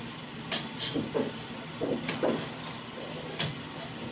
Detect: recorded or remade recorded